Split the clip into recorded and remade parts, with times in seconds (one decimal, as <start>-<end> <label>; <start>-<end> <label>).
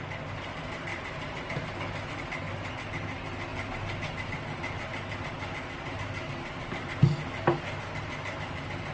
0.0-0.9 recorded; 0.9-1.8 remade; 1.8-8.9 recorded